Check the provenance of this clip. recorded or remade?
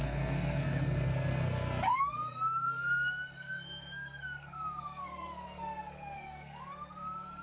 remade